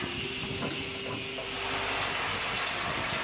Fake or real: real